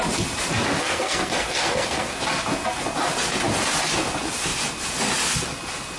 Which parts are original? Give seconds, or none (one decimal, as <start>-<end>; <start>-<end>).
0.0-0.8; 2.2-6.0